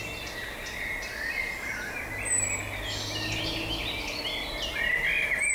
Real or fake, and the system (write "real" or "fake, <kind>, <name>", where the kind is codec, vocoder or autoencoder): real